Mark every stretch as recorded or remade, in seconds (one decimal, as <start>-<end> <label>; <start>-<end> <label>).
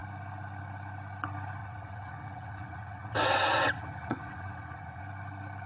0.0-1.6 recorded; 1.6-5.0 remade; 5.0-5.7 recorded